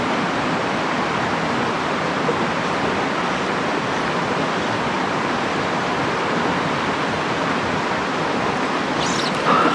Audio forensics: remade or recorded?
recorded